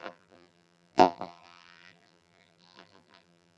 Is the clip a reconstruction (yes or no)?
yes